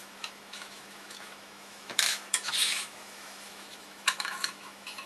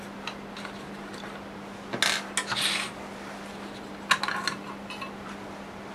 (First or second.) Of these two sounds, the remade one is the first